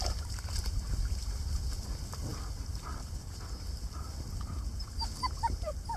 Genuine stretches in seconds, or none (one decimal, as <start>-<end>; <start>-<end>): 0.0-6.0